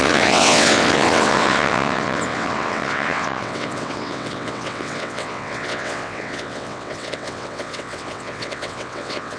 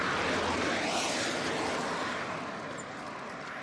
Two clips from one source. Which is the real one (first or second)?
second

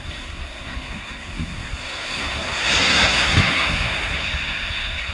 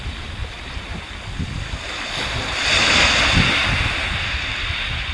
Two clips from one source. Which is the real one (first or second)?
second